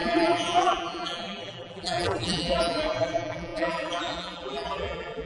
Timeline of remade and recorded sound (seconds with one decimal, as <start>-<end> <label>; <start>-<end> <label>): 0.0-5.3 remade